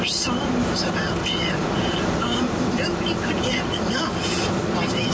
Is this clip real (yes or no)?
yes